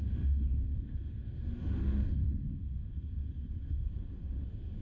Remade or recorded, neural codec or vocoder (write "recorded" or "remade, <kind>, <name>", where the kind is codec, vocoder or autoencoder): remade, autoencoder, DAC-VAE